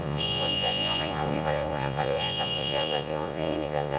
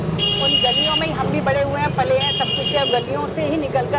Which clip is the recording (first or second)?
second